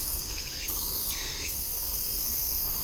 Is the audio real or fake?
fake